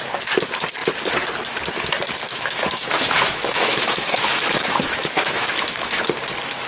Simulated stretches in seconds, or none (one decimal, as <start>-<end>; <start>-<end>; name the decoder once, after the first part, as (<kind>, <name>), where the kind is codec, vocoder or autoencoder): 2.3-6.0 (autoencoder, DAC-VAE)